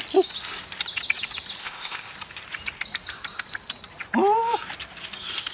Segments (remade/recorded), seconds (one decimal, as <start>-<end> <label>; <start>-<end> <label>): 0.0-1.6 recorded; 1.6-2.1 remade; 2.1-5.5 recorded